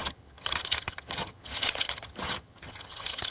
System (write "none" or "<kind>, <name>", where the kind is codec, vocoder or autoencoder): vocoder, HiFi-GAN